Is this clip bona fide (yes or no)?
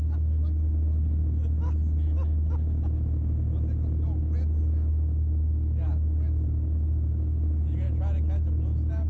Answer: yes